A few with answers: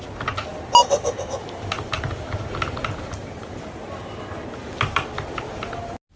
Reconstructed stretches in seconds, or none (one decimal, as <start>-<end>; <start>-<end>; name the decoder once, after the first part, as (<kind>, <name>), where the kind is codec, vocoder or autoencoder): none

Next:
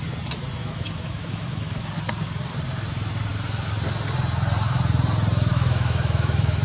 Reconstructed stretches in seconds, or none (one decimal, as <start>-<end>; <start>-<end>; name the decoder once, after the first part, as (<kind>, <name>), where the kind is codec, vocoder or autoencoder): 0.6-1.8 (autoencoder, DAC-VAE); 5.5-6.6

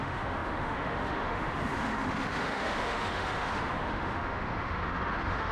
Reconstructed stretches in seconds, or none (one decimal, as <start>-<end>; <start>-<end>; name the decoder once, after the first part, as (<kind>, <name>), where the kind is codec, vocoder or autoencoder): 0.0-5.5 (autoencoder, DAC-VAE)

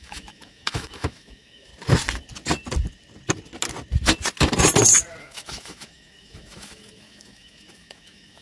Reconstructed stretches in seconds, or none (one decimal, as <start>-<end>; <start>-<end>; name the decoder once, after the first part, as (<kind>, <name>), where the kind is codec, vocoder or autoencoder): 0.0-1.7 (autoencoder, DAC-VAE); 5.2-8.4

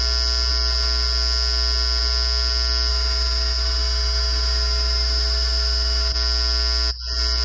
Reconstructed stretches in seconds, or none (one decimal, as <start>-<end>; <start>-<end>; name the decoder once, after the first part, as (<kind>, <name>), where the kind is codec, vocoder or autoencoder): 2.9-6.1 (autoencoder, DAC-VAE)

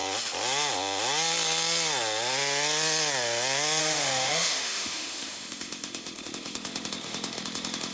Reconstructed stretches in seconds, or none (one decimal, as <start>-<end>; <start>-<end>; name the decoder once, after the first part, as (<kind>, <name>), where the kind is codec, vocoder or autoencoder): 3.8-7.9 (autoencoder, DAC-VAE)

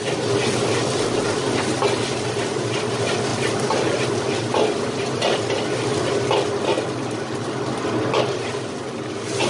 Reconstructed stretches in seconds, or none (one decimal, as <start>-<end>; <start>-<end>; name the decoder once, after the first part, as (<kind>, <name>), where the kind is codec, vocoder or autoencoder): none